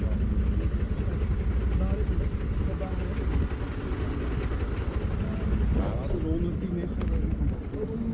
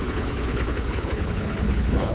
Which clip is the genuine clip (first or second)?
first